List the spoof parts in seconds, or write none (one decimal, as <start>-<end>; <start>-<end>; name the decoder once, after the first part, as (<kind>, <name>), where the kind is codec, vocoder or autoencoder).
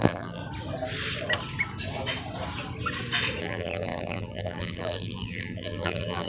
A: 0.0-0.4 (vocoder, BigVGAN v2); 3.4-6.3